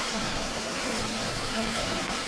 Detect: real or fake fake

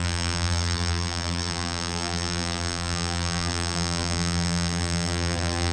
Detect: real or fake fake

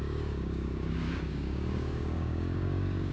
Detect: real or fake fake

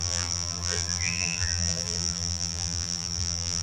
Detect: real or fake fake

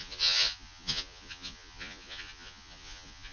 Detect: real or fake fake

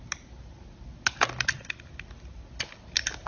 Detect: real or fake real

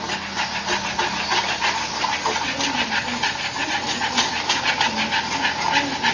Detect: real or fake real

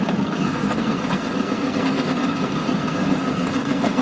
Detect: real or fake fake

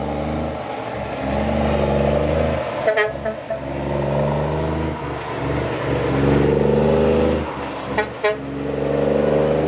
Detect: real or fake real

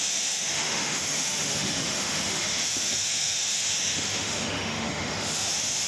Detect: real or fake fake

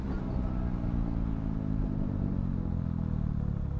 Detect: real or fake real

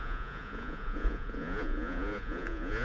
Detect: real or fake fake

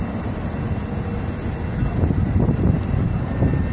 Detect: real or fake real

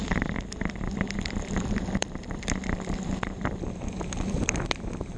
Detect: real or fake fake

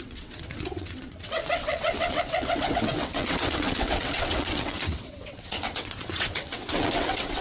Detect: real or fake fake